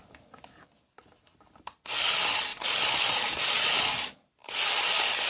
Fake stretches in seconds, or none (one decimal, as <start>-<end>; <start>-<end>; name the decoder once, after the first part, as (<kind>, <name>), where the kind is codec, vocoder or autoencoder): 2.5-4.3 (vocoder, BigVGAN v2)